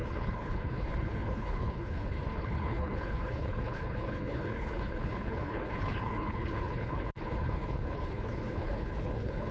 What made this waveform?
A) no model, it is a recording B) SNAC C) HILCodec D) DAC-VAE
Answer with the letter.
C